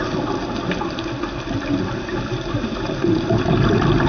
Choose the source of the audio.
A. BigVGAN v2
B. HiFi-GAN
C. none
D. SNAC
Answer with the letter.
C